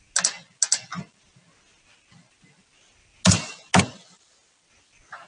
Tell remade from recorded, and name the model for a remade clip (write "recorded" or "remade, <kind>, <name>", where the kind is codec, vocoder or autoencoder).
recorded